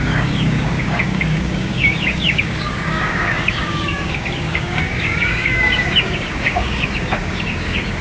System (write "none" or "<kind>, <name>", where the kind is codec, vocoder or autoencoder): codec, DAC